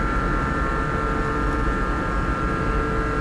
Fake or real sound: real